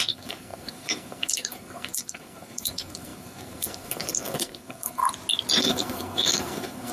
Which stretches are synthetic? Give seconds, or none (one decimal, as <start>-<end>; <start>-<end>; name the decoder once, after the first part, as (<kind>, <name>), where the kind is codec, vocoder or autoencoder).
0.0-5.0 (codec, SNAC); 5.6-6.9